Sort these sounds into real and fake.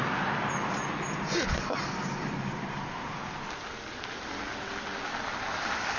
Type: real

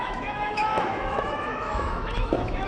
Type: fake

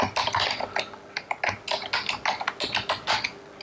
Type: real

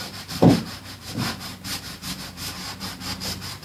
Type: fake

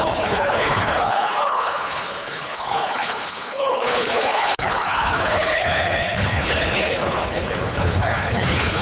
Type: fake